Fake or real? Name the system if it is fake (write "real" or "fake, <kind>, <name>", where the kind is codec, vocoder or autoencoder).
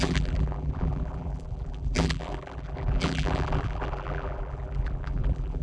fake, vocoder, BigVGAN v2